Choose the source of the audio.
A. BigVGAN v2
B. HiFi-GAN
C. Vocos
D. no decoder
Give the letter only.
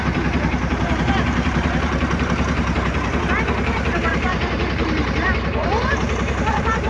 A